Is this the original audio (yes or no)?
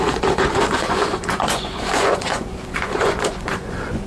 no